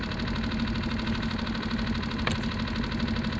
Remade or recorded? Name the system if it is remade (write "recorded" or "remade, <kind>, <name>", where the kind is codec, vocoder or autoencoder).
recorded